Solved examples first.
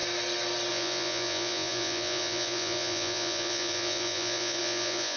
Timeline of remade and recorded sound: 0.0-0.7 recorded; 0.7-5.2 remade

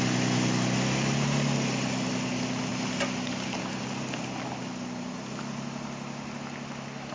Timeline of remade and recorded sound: 0.0-7.1 recorded

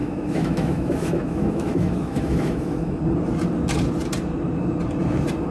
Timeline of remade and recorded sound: 0.0-3.0 remade; 3.0-5.5 recorded

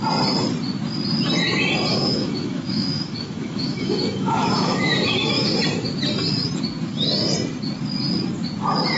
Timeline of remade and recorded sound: 0.0-1.9 recorded; 1.9-5.6 remade; 5.6-9.0 recorded

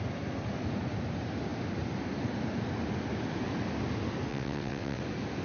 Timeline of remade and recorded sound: 0.0-4.3 recorded; 4.3-5.0 remade; 5.0-5.4 recorded